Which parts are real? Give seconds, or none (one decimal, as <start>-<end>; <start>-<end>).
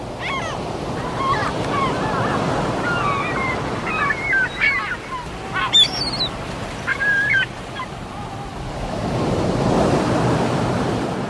0.0-1.4; 3.9-6.9; 7.4-11.3